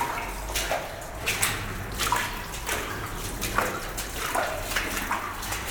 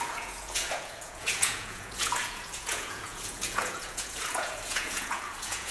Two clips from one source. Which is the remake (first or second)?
second